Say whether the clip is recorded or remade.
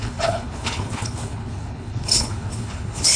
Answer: remade